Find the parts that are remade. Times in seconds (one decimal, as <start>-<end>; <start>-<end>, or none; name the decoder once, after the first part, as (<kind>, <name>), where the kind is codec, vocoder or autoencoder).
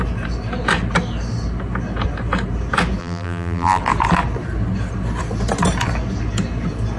3.0-3.8 (vocoder, BigVGAN v2)